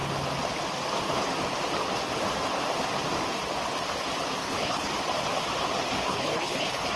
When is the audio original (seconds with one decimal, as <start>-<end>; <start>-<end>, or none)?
0.0-4.4; 4.9-6.1